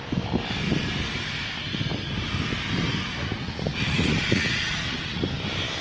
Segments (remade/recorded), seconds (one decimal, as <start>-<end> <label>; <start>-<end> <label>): 0.0-3.1 recorded; 3.1-5.2 remade; 5.2-5.8 recorded